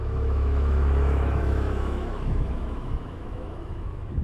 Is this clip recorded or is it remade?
remade